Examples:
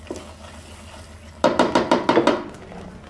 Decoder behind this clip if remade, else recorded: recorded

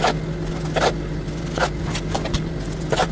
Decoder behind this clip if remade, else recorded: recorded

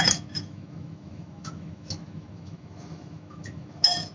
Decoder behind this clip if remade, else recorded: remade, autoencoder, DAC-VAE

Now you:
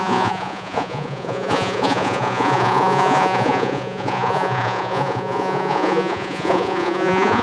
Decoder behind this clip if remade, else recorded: remade, vocoder, Vocos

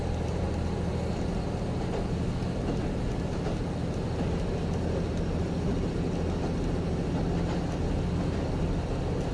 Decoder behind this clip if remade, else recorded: recorded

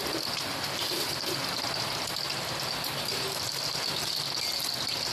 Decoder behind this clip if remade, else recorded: recorded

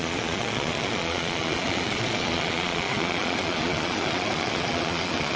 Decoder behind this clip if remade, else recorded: remade, vocoder, Vocos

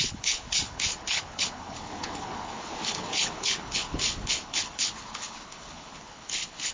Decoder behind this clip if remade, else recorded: remade, codec, HILCodec